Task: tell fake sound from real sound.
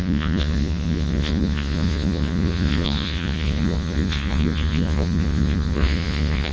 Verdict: fake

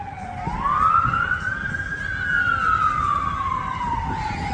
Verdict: real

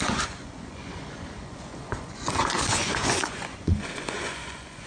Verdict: fake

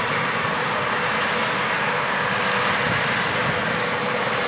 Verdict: real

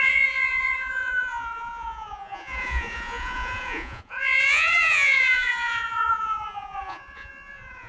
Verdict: fake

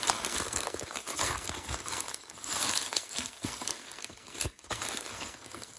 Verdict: fake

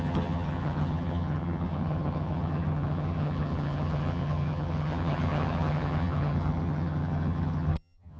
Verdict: fake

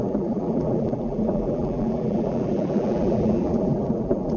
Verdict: fake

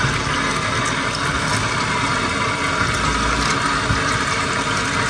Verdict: real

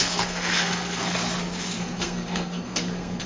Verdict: fake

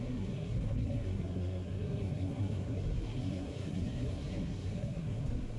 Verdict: fake